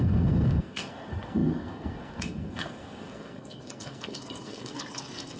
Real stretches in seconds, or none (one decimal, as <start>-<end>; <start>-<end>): none